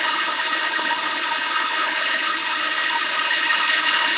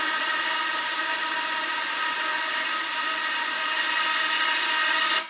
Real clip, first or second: second